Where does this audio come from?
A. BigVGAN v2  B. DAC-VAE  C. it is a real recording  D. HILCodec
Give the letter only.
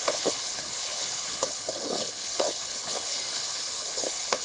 D